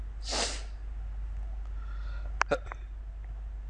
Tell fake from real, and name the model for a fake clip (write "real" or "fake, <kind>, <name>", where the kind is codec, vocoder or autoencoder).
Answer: real